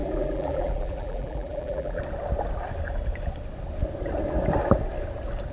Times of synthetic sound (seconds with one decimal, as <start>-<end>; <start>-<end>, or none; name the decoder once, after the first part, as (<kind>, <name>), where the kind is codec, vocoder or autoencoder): 0.0-2.0 (vocoder, BigVGAN v2)